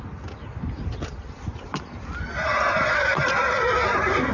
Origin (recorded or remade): recorded